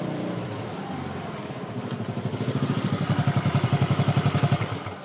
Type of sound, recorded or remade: remade